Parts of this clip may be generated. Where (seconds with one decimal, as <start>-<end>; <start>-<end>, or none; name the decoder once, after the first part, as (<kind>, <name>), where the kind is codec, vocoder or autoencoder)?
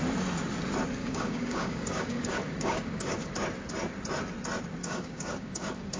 1.0-3.3 (codec, DAC); 4.8-6.0